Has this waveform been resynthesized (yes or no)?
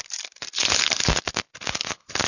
no